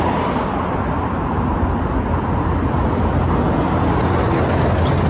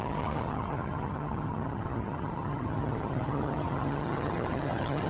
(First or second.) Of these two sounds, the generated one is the second